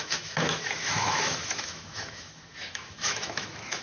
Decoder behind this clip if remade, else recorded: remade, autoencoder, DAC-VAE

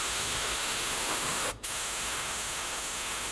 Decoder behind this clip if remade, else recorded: remade, autoencoder, DAC-VAE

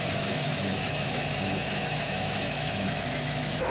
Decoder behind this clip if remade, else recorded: remade, autoencoder, DAC-VAE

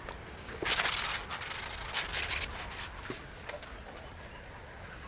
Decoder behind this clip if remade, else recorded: recorded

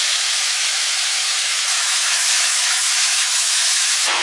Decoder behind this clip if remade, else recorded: remade, autoencoder, DAC-VAE